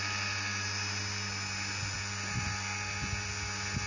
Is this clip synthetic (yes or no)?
no